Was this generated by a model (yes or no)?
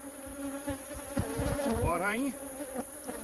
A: yes